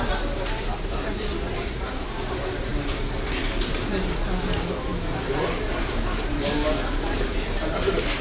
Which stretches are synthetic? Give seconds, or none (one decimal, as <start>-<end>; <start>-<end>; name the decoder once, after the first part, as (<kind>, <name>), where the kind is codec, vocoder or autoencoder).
none